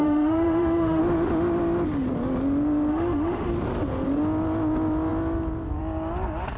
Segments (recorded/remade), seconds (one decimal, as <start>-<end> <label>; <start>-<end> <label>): 0.0-1.0 remade; 1.0-2.9 recorded; 2.9-3.5 remade; 3.5-6.6 recorded